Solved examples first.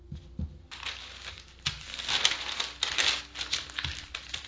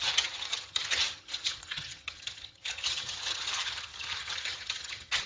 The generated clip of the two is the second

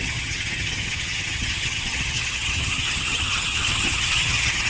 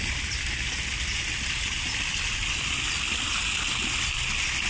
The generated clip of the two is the first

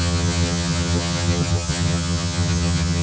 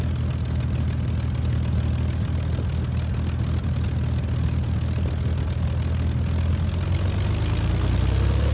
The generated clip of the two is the first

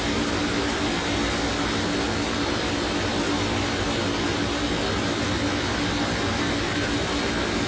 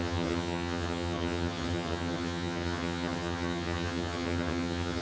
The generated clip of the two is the second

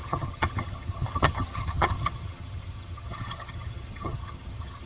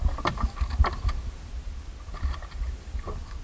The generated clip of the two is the first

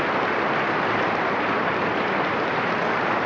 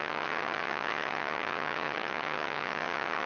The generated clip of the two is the second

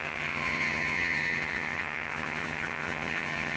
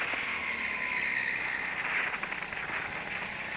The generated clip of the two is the first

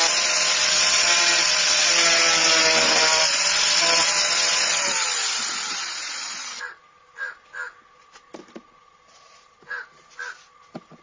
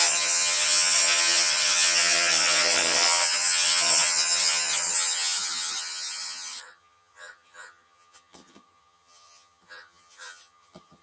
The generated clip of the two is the second